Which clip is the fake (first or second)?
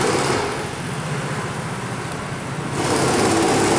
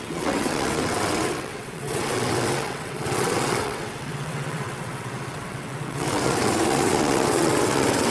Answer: second